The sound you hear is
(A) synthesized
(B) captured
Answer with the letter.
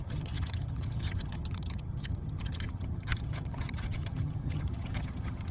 A